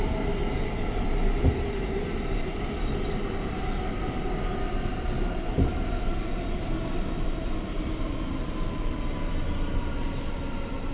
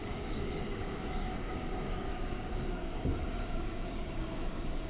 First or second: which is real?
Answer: first